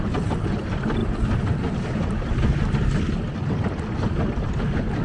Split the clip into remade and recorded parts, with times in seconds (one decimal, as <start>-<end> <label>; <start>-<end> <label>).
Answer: 0.0-5.0 recorded